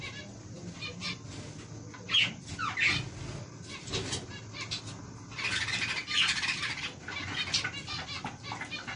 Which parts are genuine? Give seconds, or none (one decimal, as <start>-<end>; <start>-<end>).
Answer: 0.0-9.0